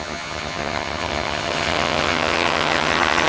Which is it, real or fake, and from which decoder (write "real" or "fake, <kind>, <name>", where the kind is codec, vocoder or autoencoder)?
fake, vocoder, HiFi-GAN